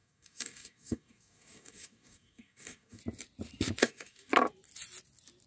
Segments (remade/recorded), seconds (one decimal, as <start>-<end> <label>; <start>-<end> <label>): 0.0-3.0 remade; 3.0-3.8 recorded; 3.8-4.3 remade; 4.3-5.5 recorded